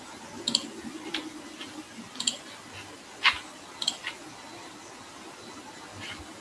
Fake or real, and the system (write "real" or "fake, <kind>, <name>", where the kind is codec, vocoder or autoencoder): real